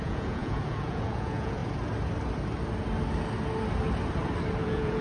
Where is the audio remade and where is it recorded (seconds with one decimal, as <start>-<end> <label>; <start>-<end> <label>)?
0.0-1.6 remade; 1.6-4.6 recorded; 4.6-5.0 remade